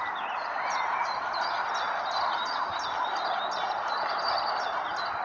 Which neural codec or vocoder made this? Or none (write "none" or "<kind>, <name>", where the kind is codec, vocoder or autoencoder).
vocoder, BigVGAN v2